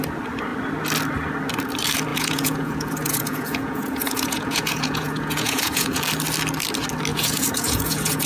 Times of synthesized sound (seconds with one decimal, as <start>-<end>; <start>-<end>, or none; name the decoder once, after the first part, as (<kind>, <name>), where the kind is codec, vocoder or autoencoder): 2.1-6.0 (vocoder, Vocos); 7.1-8.3